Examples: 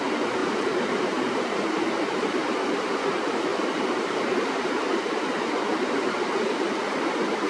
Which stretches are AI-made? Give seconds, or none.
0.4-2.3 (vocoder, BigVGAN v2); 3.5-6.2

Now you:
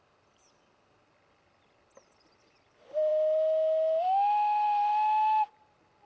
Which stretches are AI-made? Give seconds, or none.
none

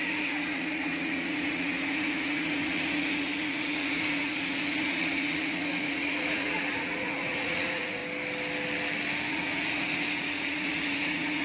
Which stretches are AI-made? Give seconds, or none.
0.0-8.0 (vocoder, Vocos); 9.3-11.4